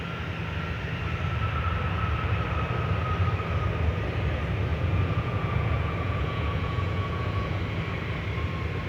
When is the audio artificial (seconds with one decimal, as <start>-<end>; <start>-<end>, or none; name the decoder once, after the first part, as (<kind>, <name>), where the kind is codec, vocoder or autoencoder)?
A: 4.7-7.6 (vocoder, Vocos)